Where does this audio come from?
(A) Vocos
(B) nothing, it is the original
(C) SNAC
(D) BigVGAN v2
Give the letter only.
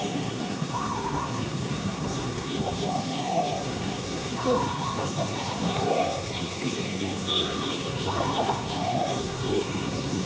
C